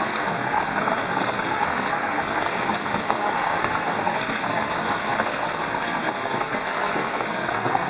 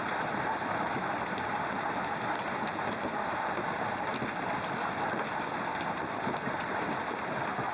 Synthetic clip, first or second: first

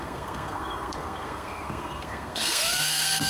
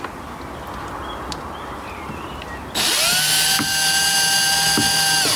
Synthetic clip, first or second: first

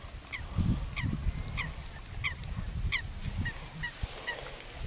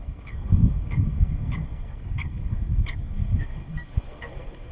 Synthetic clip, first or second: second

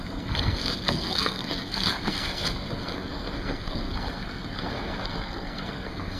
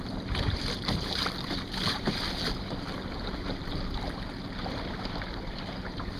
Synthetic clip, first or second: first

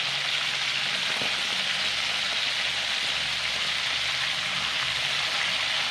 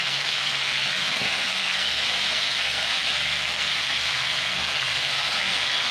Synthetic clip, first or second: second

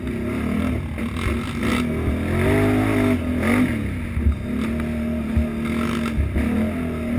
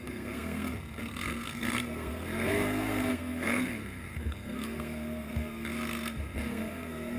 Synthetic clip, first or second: second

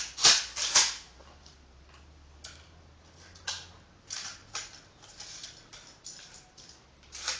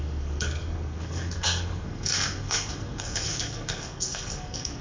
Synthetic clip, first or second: second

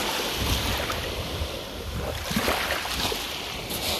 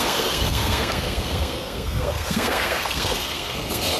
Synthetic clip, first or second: second